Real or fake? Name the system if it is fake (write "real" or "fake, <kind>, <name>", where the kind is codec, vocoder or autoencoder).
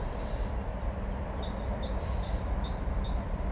fake, vocoder, BigVGAN v2